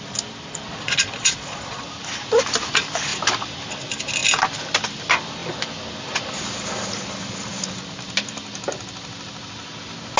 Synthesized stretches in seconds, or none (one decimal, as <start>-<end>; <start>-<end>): 0.7-1.8